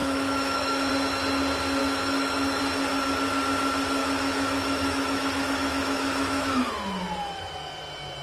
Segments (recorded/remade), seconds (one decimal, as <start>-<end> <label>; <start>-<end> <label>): 0.0-0.9 remade; 0.9-1.8 recorded; 1.8-2.6 remade; 2.6-4.0 recorded; 4.0-6.7 remade; 6.7-8.2 recorded